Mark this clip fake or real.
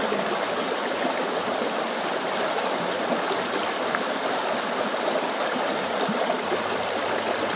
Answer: real